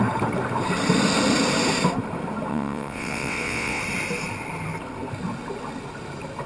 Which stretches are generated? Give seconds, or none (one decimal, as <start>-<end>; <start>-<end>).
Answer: 2.5-3.8